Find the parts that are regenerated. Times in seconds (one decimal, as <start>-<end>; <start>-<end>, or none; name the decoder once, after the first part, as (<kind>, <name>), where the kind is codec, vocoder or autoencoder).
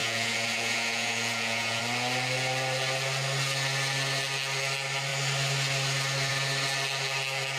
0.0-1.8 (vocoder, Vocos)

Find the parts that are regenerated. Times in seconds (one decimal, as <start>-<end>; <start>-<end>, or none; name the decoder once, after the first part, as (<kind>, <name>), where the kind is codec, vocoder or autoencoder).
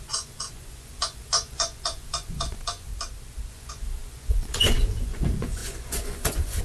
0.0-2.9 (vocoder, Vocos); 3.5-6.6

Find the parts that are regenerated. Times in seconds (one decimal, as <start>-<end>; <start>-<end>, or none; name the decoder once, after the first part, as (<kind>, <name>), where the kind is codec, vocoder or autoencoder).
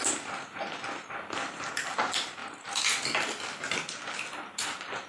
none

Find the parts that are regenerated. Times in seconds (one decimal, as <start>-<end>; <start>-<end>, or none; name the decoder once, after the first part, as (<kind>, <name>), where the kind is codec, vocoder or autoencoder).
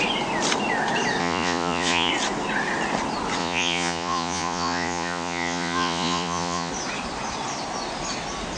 1.2-2.1 (vocoder, Vocos); 3.4-6.7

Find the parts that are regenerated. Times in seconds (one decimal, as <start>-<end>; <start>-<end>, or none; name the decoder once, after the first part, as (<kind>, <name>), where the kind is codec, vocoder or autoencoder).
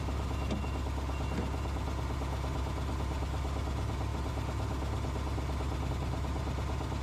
none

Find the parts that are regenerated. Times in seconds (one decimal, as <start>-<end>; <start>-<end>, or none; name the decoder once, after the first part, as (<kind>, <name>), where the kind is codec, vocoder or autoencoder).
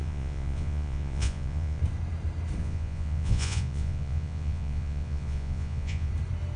0.0-1.8 (vocoder, Vocos); 2.6-6.1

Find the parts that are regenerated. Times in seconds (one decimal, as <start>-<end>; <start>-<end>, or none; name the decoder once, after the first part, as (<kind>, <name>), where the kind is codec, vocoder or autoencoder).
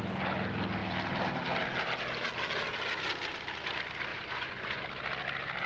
4.1-4.8 (vocoder, Vocos)